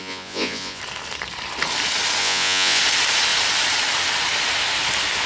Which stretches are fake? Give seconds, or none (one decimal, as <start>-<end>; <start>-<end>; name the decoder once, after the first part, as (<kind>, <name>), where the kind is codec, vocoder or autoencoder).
0.0-0.8 (vocoder, Vocos); 2.2-2.8